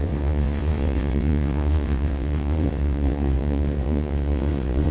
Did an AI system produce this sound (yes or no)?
yes